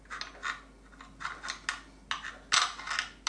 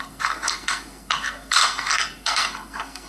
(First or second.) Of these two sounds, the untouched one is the first